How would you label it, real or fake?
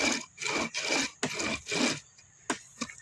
real